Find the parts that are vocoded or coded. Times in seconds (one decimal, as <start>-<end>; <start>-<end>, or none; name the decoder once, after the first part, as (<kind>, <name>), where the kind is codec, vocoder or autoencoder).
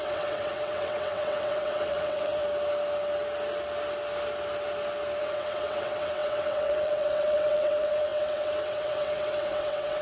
0.0-2.4 (vocoder, WaveNeXt); 5.2-10.0